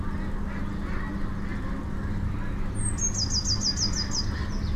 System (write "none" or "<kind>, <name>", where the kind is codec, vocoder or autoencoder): none